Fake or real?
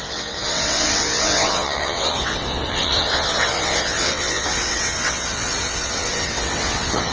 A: fake